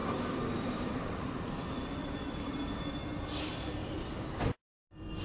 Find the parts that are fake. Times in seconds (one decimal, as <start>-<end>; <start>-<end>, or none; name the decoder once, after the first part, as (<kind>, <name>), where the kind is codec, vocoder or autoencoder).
0.0-2.9 (vocoder, BigVGAN v2); 3.8-4.6